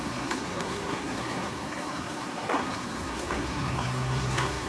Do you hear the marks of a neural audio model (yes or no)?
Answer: yes